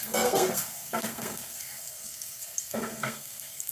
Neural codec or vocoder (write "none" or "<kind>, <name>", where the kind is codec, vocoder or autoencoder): codec, SNAC